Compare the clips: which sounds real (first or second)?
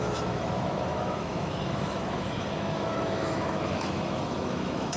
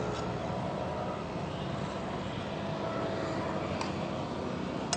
second